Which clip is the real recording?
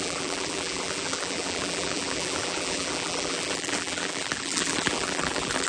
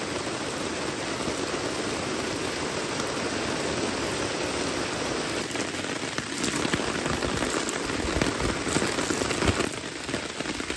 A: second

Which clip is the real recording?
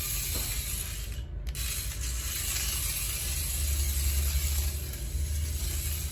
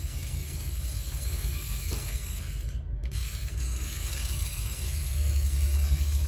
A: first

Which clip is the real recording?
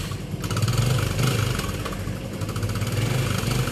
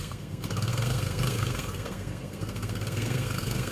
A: first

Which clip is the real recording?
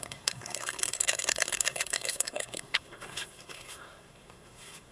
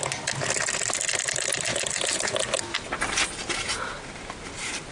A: second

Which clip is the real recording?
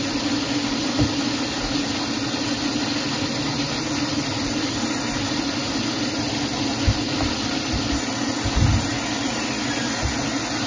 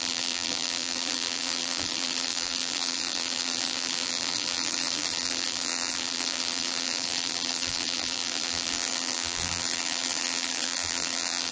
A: first